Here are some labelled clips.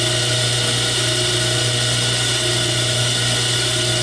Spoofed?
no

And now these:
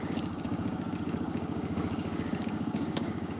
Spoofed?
yes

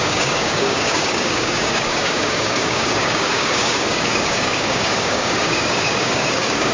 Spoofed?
yes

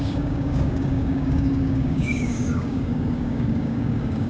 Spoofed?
yes